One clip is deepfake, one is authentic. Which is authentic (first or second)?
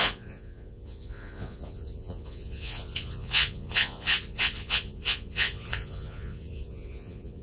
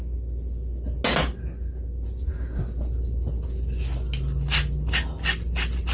second